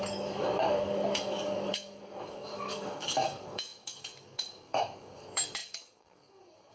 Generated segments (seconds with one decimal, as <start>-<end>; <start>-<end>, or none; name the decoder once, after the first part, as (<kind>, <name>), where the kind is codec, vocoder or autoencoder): 0.0-6.7 (codec, DAC)